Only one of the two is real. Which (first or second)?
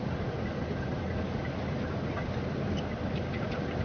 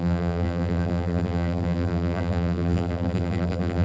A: first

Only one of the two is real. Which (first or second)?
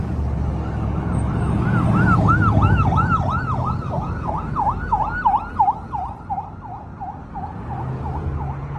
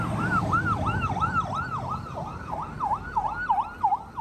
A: first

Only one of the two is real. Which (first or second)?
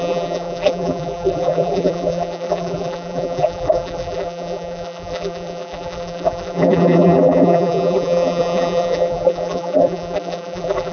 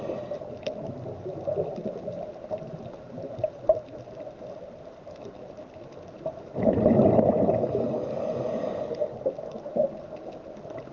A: second